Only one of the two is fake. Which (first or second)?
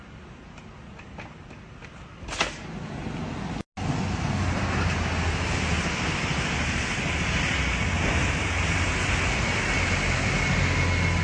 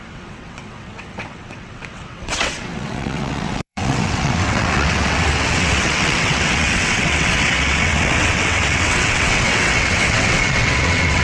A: second